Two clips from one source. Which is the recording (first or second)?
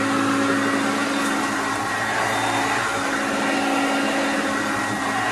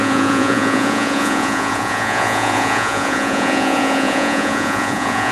first